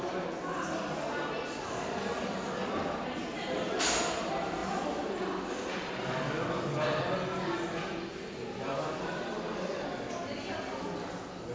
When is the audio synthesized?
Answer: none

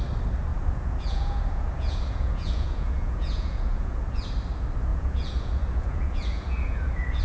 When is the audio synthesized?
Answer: 0.5-4.0; 4.9-7.2